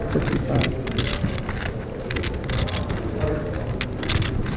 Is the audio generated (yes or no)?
no